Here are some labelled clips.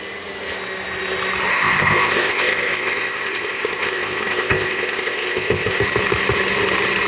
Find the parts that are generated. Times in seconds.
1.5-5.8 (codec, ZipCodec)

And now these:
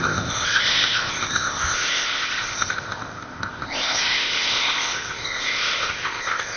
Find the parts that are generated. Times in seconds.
0.0-6.6 (codec, ZipCodec)

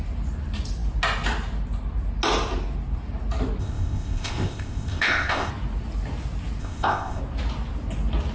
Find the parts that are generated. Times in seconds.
3.6-5.5 (codec, ZipCodec); 6.6-7.2

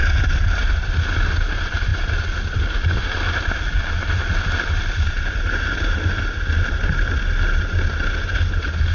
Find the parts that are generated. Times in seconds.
none